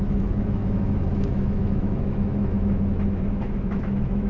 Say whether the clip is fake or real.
fake